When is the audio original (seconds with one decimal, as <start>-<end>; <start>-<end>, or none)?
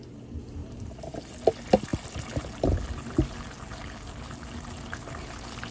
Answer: 0.0-0.6; 1.3-5.7